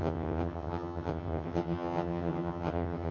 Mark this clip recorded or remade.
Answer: remade